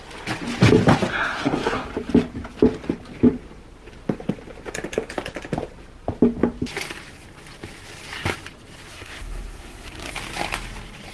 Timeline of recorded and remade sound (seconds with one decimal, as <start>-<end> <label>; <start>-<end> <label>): 0.0-1.1 recorded; 1.1-1.9 remade; 1.9-8.9 recorded; 8.9-10.1 remade; 10.1-11.1 recorded